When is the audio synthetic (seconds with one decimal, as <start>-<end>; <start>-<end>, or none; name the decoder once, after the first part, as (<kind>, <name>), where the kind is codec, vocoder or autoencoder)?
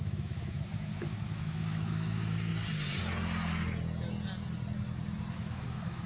0.0-2.5 (autoencoder, DAC-VAE); 5.3-6.1